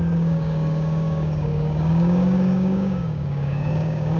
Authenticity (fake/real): fake